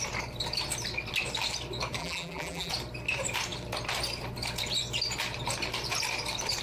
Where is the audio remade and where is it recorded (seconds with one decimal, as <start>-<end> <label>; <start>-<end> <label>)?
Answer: 0.0-2.0 recorded; 2.0-2.7 remade; 2.7-6.6 recorded